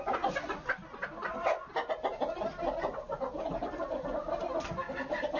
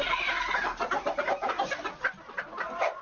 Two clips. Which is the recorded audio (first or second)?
first